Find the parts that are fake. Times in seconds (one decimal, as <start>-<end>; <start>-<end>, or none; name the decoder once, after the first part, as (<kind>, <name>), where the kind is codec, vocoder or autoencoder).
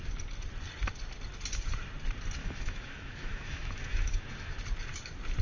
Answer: 2.4-4.6 (autoencoder, DAC-VAE)